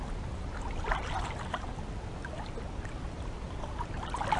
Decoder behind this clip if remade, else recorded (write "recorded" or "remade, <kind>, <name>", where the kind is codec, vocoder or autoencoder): recorded